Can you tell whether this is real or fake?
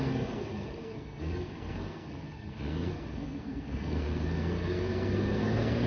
fake